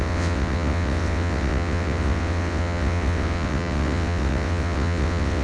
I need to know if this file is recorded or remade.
remade